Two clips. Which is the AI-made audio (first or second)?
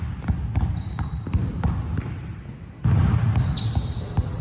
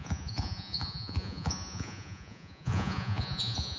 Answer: second